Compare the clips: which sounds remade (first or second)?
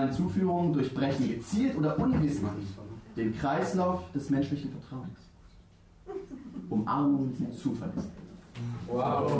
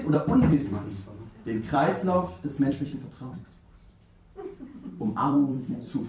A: second